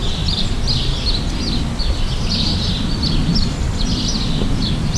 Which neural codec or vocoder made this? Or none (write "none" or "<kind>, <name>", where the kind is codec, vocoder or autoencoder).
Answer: none